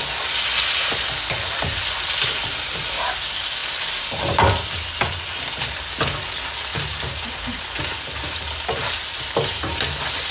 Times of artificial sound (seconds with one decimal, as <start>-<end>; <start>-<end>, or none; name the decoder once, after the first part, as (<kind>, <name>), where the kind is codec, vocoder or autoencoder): 6.7-7.6 (vocoder, BigVGAN v2)